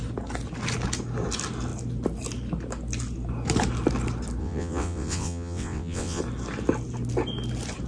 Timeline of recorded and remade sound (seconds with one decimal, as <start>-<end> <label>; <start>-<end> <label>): 0.0-4.4 recorded; 4.4-6.2 remade; 6.2-7.9 recorded

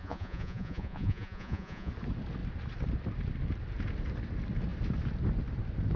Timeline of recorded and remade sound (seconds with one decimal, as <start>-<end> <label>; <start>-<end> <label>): 0.0-1.9 remade; 1.9-6.0 recorded

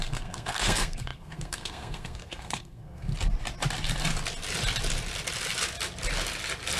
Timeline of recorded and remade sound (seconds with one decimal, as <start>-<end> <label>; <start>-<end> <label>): 0.0-3.1 remade; 3.1-6.8 recorded

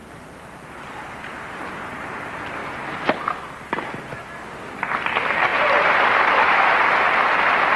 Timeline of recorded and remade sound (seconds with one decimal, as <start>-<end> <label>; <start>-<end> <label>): 0.0-5.5 recorded; 5.5-7.0 remade; 7.0-7.8 recorded

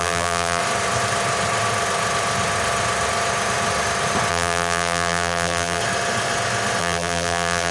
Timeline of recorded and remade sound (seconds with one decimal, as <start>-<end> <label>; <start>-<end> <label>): 0.0-0.6 remade; 0.6-4.3 recorded; 4.3-5.8 remade; 5.8-6.8 recorded; 6.8-7.7 remade